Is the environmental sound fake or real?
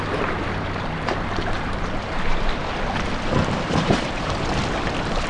real